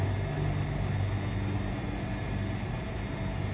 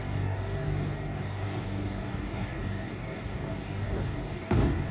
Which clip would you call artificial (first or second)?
second